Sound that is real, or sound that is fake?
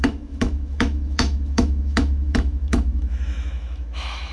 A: fake